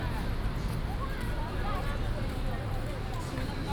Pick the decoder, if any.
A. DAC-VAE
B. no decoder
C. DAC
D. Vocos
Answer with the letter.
B